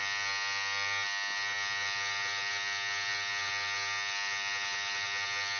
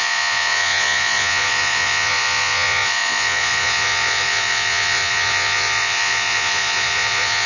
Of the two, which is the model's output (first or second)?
second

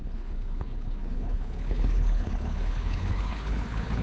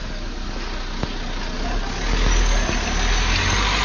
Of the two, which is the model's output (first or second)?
first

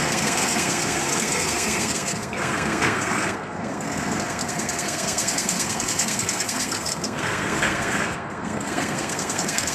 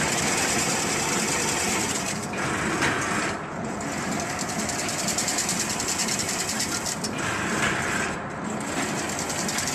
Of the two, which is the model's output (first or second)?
first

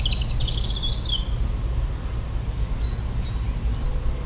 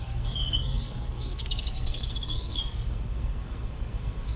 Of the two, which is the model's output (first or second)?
second